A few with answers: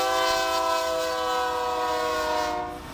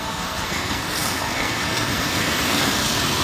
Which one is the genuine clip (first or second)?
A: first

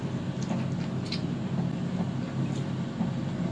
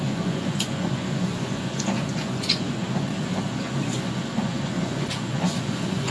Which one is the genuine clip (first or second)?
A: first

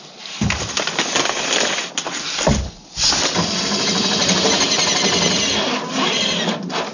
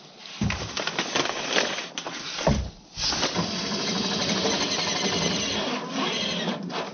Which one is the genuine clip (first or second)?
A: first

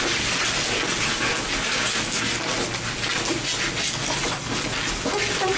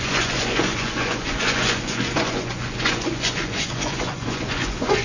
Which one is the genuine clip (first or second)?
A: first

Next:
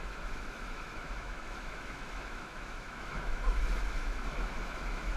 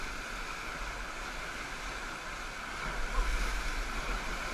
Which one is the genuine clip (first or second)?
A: second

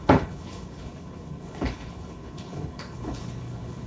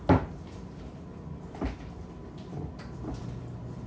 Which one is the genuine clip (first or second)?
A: second